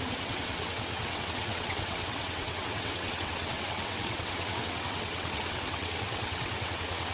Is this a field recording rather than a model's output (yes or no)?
no